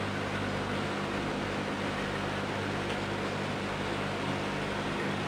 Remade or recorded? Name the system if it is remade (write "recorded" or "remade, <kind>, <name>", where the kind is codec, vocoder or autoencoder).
recorded